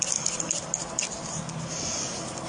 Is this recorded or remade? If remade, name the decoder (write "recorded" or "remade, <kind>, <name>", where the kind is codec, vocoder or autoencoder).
recorded